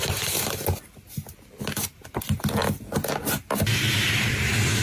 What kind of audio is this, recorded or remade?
recorded